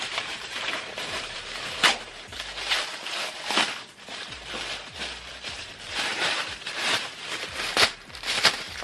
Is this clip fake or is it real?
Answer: fake